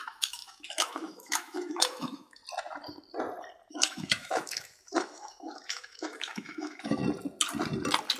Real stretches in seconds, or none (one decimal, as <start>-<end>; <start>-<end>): 2.4-3.7; 7.0-8.2